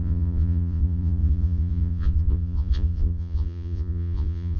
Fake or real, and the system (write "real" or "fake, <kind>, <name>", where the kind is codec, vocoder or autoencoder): fake, vocoder, Vocos